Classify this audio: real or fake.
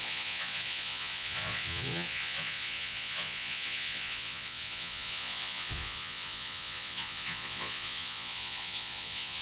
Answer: fake